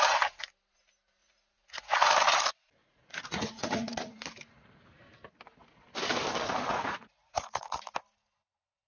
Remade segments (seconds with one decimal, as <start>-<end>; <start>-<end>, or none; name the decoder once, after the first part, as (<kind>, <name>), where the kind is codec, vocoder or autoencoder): 1.2-2.1 (vocoder, Vocos); 2.8-4.2; 6.7-7.8